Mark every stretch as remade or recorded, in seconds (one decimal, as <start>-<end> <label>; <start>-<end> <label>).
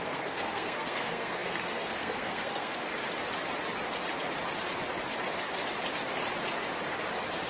0.0-2.9 remade; 2.9-7.5 recorded